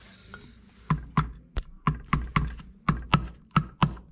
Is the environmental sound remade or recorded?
recorded